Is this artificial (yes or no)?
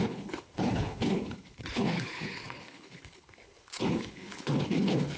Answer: yes